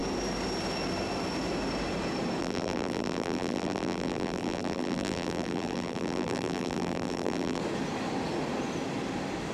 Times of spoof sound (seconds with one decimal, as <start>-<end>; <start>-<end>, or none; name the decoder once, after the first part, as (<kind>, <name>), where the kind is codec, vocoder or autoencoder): 2.4-7.6 (vocoder, BigVGAN v2)

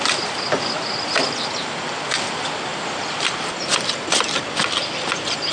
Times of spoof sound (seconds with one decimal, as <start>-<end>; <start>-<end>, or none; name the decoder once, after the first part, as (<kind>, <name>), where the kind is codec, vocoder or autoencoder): none

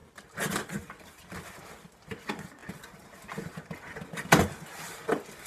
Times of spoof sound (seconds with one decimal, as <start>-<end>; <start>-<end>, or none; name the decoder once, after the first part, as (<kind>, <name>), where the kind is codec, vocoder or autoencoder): none